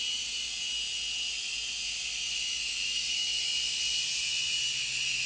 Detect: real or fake real